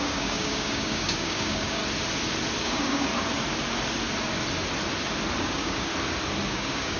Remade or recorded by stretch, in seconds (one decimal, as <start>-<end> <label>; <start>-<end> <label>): 0.0-1.8 remade; 1.8-2.6 recorded; 2.6-3.1 remade; 3.1-5.4 recorded; 5.4-5.9 remade; 5.9-6.5 recorded; 6.5-7.0 remade